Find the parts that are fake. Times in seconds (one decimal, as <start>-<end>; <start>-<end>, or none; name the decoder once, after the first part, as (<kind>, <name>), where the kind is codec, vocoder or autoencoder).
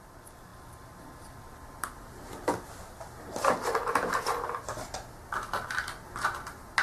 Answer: none